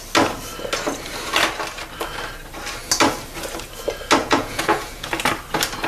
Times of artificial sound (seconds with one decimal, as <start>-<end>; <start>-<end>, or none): 4.2-5.1